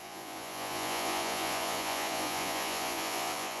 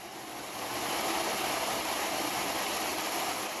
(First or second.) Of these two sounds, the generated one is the first